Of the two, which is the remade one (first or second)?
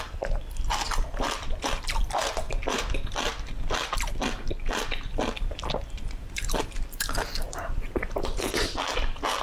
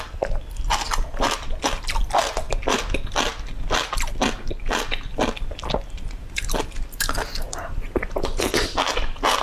first